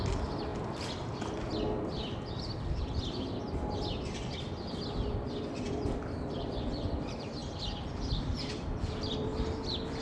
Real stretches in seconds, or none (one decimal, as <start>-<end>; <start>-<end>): 0.5-4.7